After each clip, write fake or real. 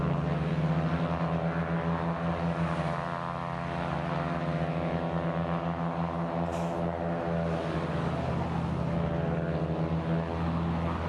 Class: real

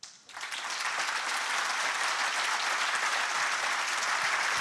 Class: real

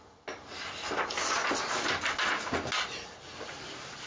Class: real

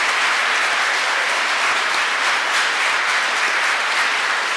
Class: real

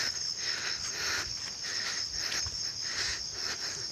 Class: real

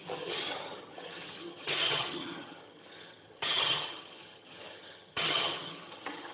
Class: fake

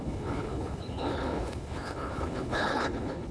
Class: fake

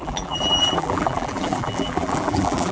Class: fake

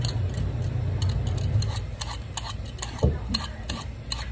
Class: real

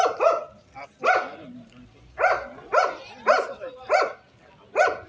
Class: real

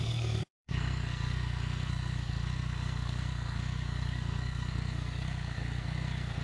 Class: fake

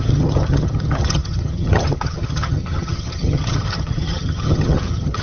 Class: fake